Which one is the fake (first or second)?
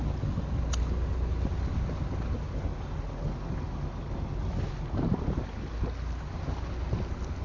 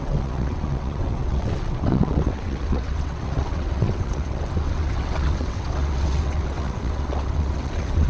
second